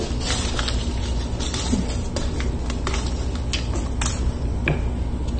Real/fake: real